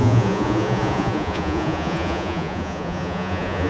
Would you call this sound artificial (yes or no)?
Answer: yes